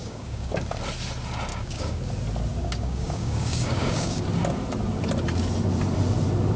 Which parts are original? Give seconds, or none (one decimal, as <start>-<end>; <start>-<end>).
0.5-1.5; 2.0-2.6; 4.2-6.6